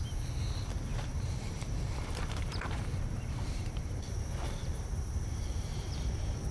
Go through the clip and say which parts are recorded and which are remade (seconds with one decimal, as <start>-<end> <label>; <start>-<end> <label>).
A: 0.0-5.7 remade; 5.7-6.5 recorded